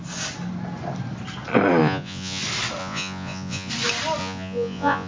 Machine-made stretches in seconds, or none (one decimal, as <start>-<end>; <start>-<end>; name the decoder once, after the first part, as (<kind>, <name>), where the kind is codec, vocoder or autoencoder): 1.8-2.4 (vocoder, Vocos); 2.8-3.7; 4.2-5.1

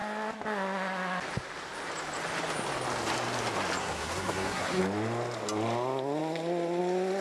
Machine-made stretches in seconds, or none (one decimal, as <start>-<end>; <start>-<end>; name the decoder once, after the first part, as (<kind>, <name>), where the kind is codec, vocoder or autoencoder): 3.8-4.8 (codec, SNAC)